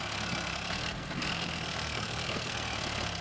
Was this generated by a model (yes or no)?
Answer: yes